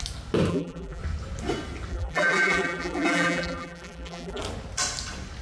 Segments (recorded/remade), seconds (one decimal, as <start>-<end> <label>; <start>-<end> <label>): 0.0-0.5 recorded; 0.5-1.0 remade; 1.0-1.9 recorded; 1.9-4.4 remade; 4.4-5.4 recorded